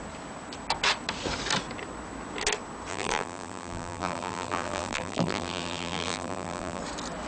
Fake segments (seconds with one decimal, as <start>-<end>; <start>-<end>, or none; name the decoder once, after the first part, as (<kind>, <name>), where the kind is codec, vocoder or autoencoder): 2.9-6.8 (vocoder, BigVGAN v2)